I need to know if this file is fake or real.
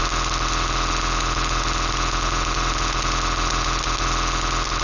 real